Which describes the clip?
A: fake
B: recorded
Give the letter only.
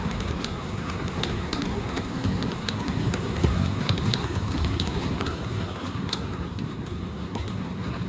A